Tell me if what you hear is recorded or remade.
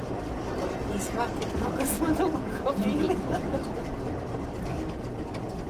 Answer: recorded